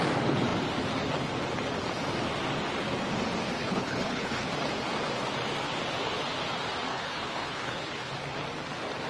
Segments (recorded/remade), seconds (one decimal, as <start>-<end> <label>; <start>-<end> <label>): 0.0-3.6 recorded; 3.6-4.5 remade; 4.5-6.9 recorded; 6.9-8.1 remade; 8.1-9.1 recorded